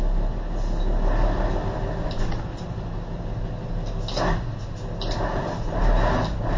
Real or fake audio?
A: real